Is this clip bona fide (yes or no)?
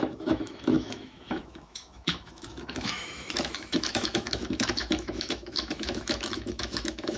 no